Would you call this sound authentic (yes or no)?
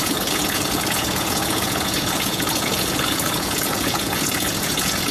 no